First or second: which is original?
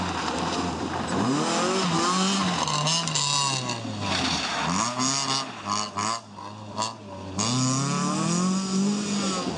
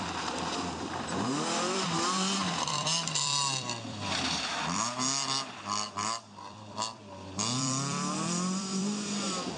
first